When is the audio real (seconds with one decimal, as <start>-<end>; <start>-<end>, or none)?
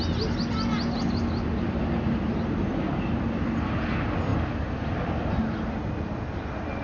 0.0-6.8